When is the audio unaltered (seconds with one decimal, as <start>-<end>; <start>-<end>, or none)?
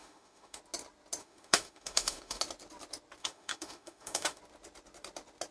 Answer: 0.6-1.2; 2.4-3.2; 4.4-5.5